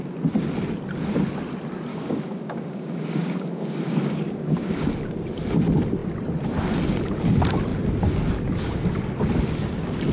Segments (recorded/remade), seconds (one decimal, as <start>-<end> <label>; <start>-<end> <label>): 0.0-1.9 recorded; 1.9-4.9 remade; 4.9-10.1 recorded